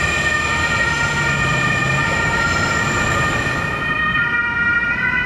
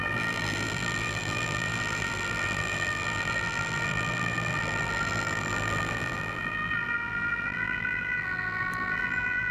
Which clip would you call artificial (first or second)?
second